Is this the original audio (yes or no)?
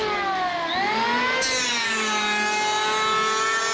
yes